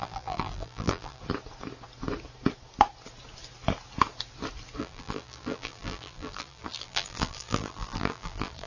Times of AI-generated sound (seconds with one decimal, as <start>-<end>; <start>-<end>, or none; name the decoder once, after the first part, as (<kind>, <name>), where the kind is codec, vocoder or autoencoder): 0.0-1.2 (vocoder, BigVGAN v2); 4.8-8.7